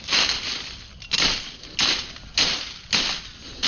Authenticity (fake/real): real